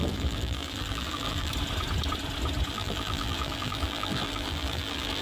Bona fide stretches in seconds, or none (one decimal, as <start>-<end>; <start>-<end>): 1.5-2.7

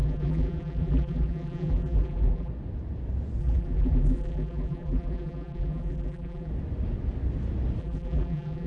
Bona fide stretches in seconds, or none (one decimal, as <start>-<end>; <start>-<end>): 2.5-3.4; 6.5-7.8